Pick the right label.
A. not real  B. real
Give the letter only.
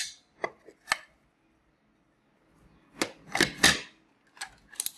B